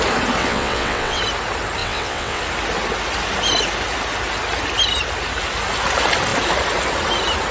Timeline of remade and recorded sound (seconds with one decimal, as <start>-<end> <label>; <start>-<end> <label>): 0.0-0.4 recorded; 0.4-1.2 remade; 1.2-1.8 recorded; 1.8-2.4 remade; 2.4-7.5 recorded